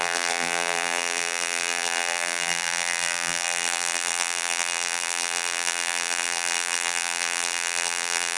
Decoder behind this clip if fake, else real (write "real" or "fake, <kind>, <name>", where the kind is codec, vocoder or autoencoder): fake, vocoder, BigVGAN v2